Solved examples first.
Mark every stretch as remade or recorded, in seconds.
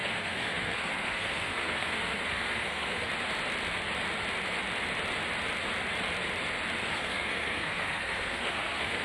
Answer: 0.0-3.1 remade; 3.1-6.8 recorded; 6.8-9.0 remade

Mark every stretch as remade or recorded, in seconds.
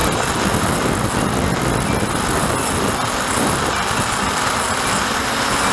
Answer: 0.0-5.7 recorded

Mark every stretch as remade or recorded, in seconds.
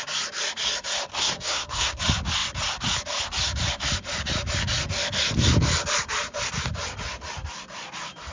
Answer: 0.0-1.1 recorded; 1.1-2.0 remade; 2.0-8.3 recorded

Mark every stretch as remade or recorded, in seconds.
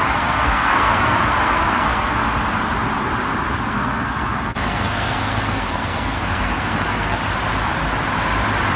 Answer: 0.0-2.2 remade; 2.2-3.6 recorded; 3.6-7.2 remade; 7.2-8.8 recorded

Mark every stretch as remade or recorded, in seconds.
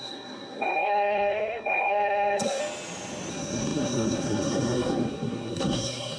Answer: 0.0-2.6 remade; 2.6-3.3 recorded; 3.3-6.2 remade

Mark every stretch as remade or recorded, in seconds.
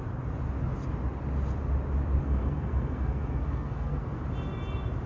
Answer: 0.0-2.2 recorded; 2.2-4.2 remade; 4.2-5.1 recorded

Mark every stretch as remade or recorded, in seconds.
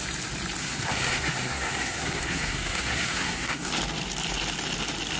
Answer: 0.0-0.6 recorded; 0.6-3.7 remade; 3.7-5.2 recorded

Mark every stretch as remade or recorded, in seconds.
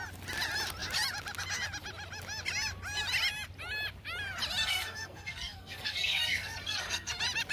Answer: 0.0-4.6 recorded; 4.6-7.1 remade; 7.1-7.5 recorded